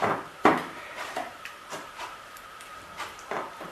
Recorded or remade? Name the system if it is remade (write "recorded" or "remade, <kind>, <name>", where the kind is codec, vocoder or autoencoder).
remade, vocoder, BigVGAN v2